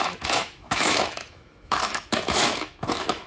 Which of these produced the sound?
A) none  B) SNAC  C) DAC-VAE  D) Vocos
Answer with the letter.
C